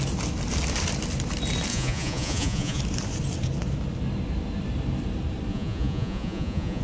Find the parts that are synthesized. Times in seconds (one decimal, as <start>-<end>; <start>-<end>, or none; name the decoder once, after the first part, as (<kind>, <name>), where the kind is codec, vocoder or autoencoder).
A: 1.7-2.8 (vocoder, Vocos); 5.5-6.8